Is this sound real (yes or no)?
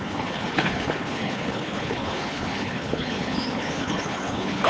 no